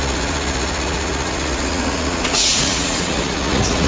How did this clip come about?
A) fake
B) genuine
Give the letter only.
A